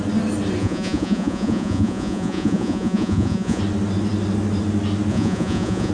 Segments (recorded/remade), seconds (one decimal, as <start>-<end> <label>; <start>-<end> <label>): 0.0-0.6 recorded; 0.6-3.6 remade; 3.6-5.1 recorded; 5.1-5.9 remade